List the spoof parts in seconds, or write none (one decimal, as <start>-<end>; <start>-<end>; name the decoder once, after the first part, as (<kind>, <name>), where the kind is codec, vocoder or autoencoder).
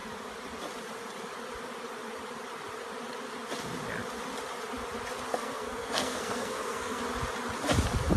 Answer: 5.3-7.0 (codec, SNAC)